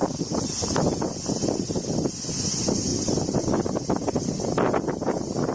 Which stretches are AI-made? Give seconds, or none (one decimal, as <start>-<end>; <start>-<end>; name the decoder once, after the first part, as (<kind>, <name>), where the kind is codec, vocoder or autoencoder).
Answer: none